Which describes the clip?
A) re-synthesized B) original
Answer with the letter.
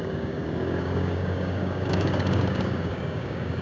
A